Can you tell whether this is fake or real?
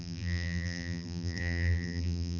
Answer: fake